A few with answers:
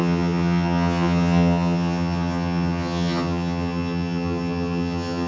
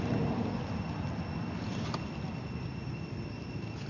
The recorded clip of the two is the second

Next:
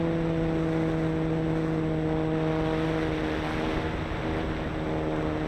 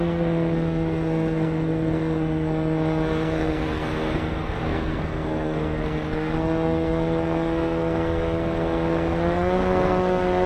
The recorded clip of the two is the first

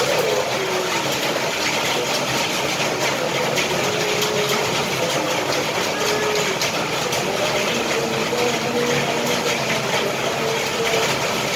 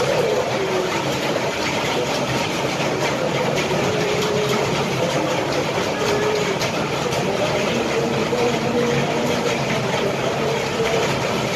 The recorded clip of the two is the first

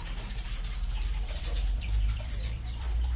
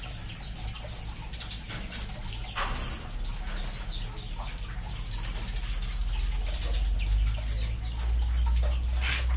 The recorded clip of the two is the second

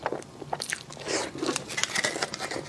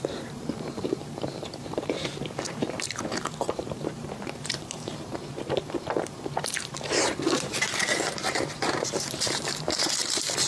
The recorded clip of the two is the first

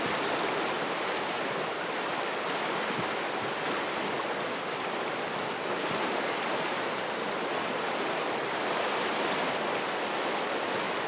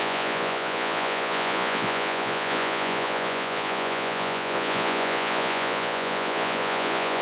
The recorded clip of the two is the first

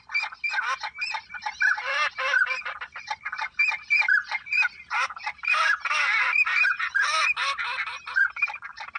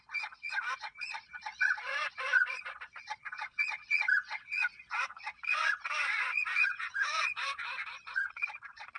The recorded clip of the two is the first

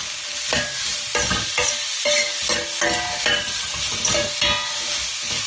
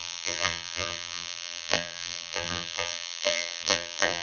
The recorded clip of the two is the first